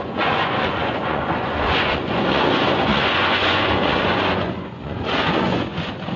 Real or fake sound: fake